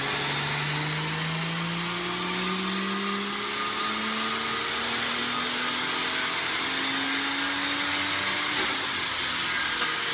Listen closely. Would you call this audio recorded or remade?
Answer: recorded